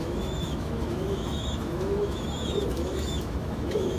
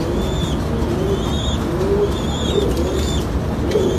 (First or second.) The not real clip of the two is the first